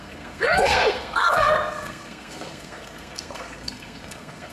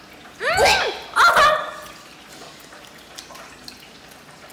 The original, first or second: second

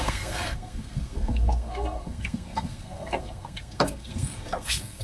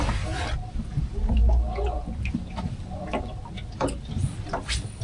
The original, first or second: second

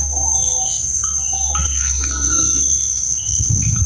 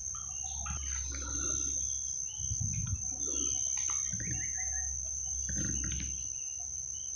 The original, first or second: second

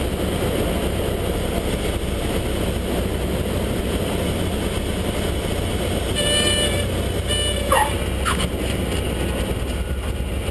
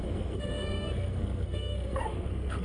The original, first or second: first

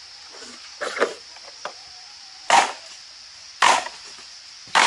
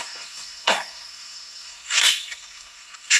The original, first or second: first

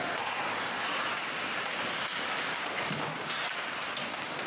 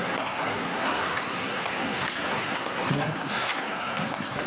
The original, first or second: first